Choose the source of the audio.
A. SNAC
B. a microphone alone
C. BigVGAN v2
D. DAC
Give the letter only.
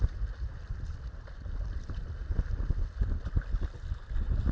B